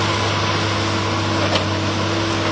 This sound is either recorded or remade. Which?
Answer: recorded